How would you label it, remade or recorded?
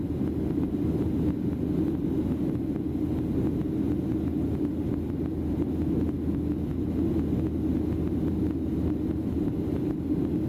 recorded